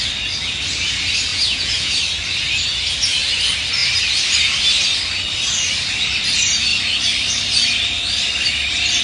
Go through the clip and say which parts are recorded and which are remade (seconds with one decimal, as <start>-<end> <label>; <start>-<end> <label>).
0.0-1.3 recorded; 1.3-1.9 remade; 1.9-9.0 recorded